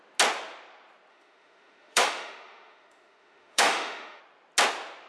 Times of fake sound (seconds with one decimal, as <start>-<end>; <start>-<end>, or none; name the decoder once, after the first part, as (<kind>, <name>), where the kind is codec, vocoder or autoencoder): 1.1-4.2 (autoencoder, DAC-VAE)